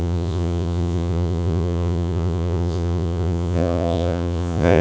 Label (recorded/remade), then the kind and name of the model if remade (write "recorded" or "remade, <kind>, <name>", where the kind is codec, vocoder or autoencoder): remade, vocoder, Vocos